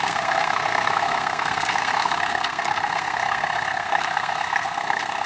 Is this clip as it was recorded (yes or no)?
no